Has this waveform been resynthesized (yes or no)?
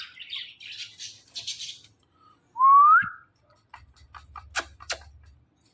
no